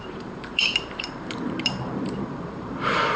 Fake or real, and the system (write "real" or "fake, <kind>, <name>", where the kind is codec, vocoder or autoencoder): fake, vocoder, BigVGAN v2